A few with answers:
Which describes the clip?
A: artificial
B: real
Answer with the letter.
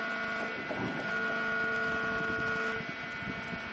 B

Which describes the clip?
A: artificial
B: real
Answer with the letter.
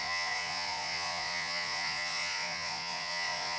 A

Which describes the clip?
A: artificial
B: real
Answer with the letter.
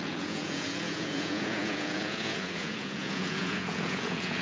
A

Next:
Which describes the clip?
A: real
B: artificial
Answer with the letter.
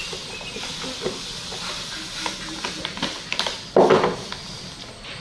A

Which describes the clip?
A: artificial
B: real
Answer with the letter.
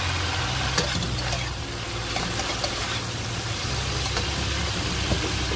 B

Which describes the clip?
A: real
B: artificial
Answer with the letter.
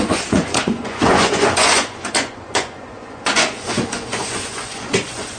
B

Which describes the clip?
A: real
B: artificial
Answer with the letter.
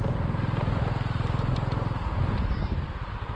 A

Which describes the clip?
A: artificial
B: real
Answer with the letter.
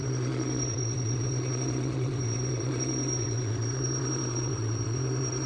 A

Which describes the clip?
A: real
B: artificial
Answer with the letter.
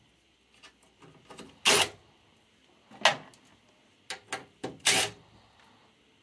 A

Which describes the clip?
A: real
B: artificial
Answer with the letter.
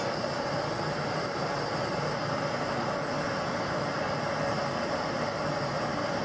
A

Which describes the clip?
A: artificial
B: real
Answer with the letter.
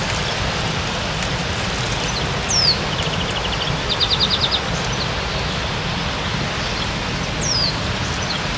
B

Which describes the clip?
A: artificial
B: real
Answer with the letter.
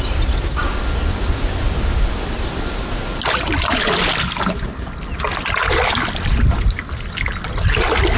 B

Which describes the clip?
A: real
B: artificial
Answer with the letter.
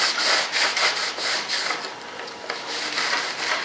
A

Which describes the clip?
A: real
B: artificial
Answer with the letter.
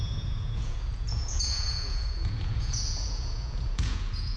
B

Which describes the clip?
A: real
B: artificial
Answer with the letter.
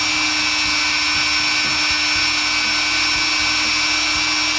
A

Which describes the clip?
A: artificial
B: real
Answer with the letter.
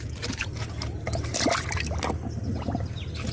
B